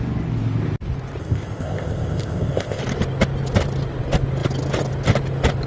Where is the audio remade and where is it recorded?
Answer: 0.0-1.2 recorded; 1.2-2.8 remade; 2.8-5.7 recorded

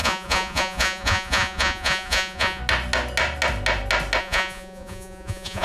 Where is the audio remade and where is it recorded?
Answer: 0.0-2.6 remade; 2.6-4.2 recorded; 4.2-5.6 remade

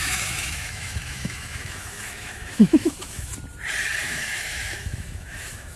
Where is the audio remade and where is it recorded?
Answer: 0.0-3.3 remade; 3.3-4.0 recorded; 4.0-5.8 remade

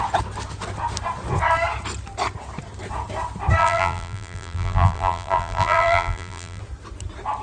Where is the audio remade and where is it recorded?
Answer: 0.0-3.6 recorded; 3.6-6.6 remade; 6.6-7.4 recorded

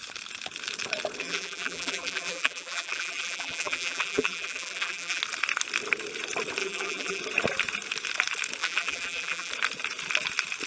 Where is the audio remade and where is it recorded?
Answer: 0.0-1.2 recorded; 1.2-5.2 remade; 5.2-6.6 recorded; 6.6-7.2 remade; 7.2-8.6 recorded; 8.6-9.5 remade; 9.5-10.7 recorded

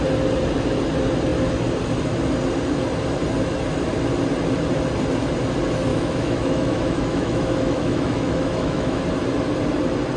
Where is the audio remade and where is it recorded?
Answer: 0.0-5.9 recorded; 5.9-9.0 remade; 9.0-10.2 recorded